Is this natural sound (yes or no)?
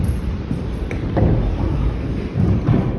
no